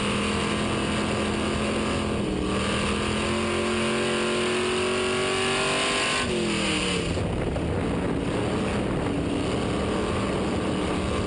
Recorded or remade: recorded